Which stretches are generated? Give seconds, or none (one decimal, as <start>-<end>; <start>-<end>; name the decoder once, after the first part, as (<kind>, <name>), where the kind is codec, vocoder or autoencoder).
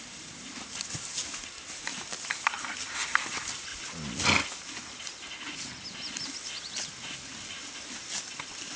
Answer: none